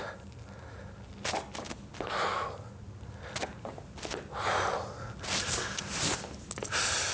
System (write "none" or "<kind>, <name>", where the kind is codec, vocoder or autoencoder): none